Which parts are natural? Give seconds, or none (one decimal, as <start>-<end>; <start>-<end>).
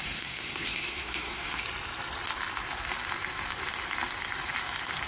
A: 1.6-5.1